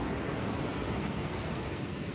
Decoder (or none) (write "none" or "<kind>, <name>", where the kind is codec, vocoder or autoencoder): codec, SNAC